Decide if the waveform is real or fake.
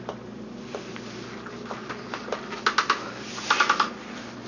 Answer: real